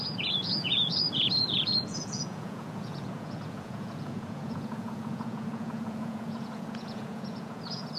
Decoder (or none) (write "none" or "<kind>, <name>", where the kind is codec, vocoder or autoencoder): vocoder, Vocos